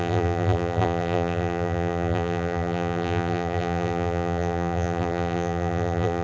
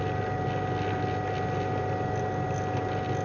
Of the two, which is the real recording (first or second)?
second